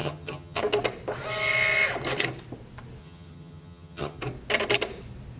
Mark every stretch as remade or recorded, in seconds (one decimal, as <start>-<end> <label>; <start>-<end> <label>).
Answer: 0.0-0.6 remade; 0.6-3.0 recorded; 3.0-4.2 remade; 4.2-5.4 recorded